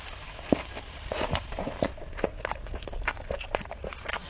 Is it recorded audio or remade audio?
recorded